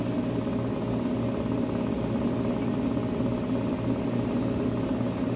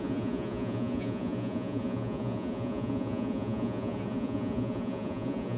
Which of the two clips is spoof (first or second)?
second